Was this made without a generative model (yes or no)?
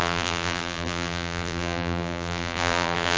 no